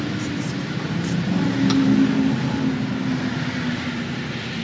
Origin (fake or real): real